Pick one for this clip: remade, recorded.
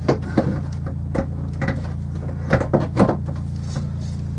recorded